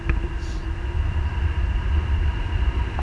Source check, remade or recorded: recorded